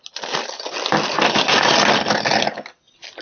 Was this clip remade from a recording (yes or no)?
no